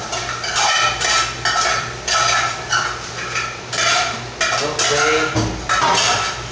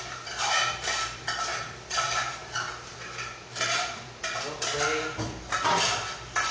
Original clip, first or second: first